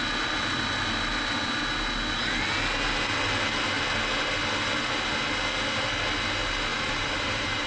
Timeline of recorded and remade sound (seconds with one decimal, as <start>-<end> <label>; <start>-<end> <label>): 0.0-6.7 recorded; 6.7-7.7 remade